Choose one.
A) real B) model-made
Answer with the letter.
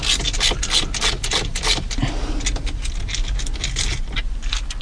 A